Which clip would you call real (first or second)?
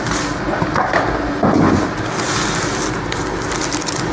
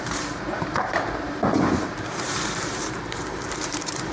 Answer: first